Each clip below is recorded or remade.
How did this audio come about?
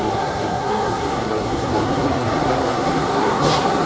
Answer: remade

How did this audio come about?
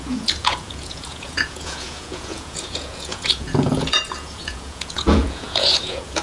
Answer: remade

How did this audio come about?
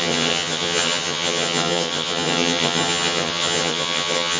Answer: remade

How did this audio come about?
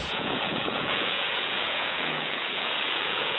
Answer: remade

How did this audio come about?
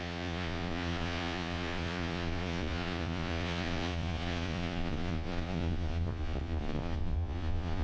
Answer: remade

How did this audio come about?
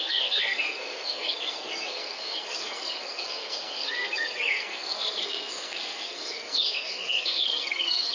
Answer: remade